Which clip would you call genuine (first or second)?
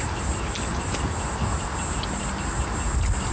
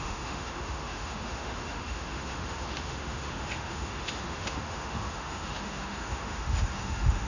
first